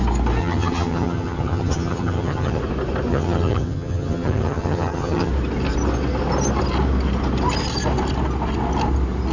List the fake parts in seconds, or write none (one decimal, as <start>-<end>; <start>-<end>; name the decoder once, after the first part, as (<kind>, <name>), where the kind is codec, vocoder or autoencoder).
0.4-2.6 (vocoder, HiFi-GAN); 3.1-5.3